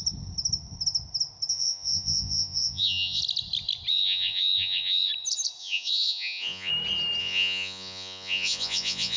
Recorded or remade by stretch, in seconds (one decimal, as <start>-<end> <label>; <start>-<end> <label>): 0.0-1.5 recorded; 1.5-3.2 remade; 3.2-3.9 recorded; 3.9-5.1 remade; 5.1-5.6 recorded; 5.6-6.7 remade; 6.7-7.2 recorded; 7.2-9.2 remade